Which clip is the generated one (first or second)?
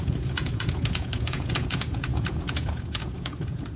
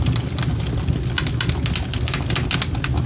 first